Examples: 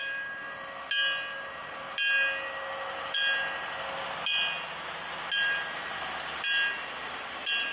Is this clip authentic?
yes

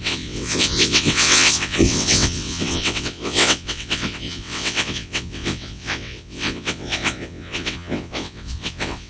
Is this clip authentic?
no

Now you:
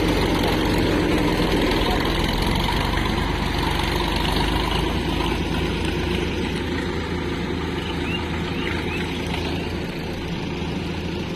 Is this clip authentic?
yes